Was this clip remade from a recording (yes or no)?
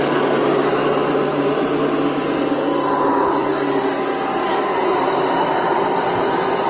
no